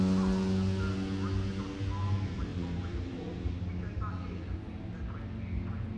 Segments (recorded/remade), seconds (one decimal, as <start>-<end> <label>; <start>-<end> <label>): 0.0-2.5 recorded; 2.5-3.4 remade; 3.4-6.0 recorded